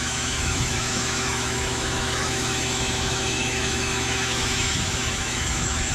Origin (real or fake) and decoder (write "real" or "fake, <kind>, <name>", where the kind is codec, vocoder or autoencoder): fake, autoencoder, DAC-VAE